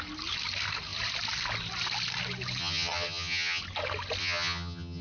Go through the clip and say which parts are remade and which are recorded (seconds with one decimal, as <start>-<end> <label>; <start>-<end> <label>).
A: 0.0-2.6 recorded; 2.6-3.6 remade; 3.6-4.2 recorded; 4.2-5.0 remade